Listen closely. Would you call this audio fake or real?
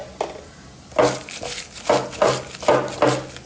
real